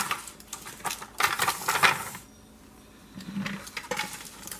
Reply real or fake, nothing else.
real